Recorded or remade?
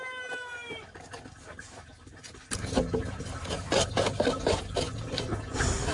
recorded